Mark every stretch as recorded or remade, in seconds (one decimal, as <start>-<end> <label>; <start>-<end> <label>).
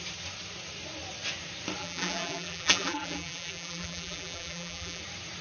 0.0-1.8 recorded; 1.8-5.0 remade; 5.0-5.4 recorded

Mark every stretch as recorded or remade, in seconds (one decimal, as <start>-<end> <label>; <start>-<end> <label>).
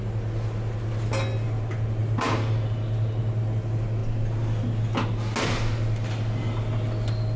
0.0-7.4 recorded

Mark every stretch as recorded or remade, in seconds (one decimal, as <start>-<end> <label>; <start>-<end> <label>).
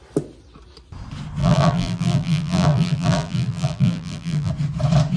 0.0-1.4 recorded; 1.4-4.5 remade; 4.5-5.2 recorded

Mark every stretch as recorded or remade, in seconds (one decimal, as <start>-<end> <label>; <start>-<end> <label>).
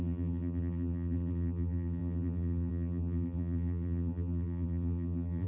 0.0-5.5 remade